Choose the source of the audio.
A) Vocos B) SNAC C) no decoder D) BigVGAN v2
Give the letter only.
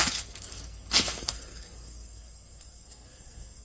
B